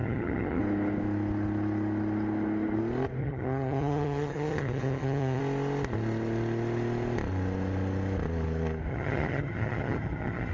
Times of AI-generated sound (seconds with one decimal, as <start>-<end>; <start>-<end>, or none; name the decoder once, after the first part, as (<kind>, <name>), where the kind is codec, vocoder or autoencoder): 0.0-0.6 (vocoder, HiFi-GAN); 3.2-5.4; 8.9-10.5